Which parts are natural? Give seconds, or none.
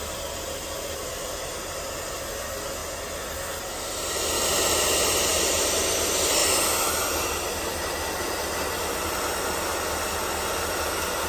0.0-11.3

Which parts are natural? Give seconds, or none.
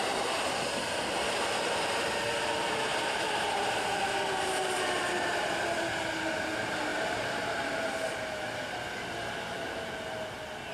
0.0-2.9; 3.9-6.9; 7.8-10.7